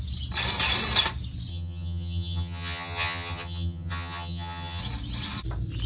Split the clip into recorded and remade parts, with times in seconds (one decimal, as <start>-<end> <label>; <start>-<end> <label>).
0.0-1.5 recorded; 1.5-4.8 remade; 4.8-5.9 recorded

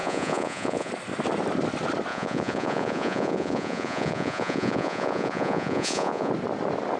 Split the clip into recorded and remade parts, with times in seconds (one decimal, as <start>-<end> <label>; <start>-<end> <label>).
0.0-0.9 remade; 0.9-2.1 recorded; 2.1-6.3 remade; 6.3-7.0 recorded

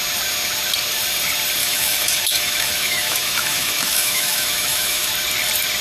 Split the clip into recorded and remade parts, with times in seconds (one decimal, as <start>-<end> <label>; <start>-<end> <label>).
0.0-1.6 recorded; 1.6-5.1 remade; 5.1-5.8 recorded

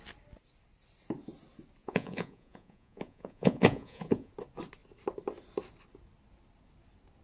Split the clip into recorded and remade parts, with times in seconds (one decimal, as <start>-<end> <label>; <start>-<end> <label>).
0.0-1.8 recorded; 1.8-4.3 remade; 4.3-7.2 recorded